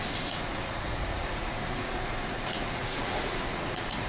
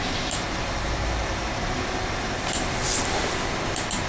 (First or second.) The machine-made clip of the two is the first